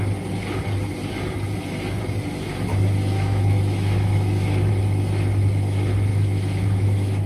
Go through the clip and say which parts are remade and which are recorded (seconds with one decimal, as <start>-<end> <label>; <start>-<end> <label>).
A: 0.0-2.7 recorded; 2.7-4.7 remade; 4.7-6.1 recorded; 6.1-7.3 remade